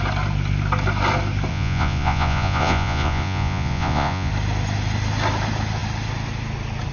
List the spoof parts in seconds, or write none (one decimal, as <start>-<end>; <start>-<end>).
1.5-4.3